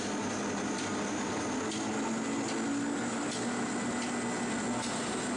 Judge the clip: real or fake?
real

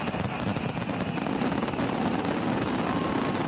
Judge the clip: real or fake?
real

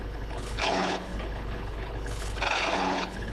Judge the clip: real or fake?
fake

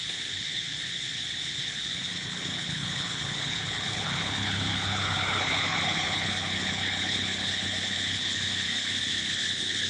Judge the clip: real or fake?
fake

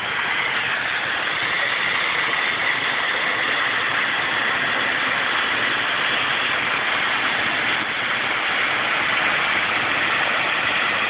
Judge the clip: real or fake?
real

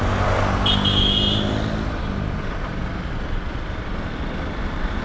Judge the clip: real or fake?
real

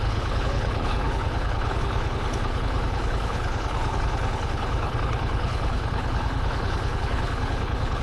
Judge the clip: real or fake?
fake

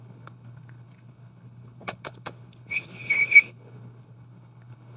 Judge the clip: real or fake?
fake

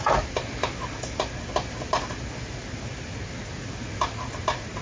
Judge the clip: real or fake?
real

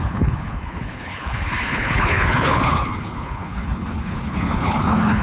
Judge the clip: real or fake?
fake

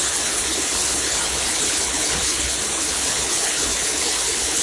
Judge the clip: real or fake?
fake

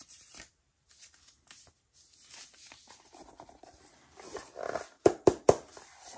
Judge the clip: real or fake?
real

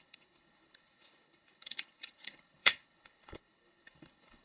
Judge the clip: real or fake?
fake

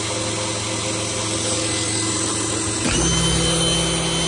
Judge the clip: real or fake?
real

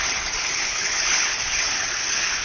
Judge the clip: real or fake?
fake